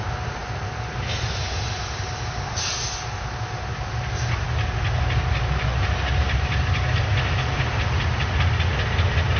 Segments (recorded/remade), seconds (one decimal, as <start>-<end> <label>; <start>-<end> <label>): 0.0-9.4 recorded